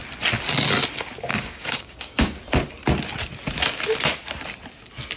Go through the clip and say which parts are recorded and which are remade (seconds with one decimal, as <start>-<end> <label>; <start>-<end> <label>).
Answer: 0.0-1.3 recorded; 1.3-2.4 remade; 2.4-5.2 recorded